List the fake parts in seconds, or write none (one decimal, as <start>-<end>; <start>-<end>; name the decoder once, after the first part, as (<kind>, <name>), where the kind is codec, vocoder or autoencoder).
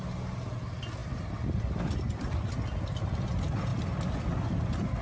none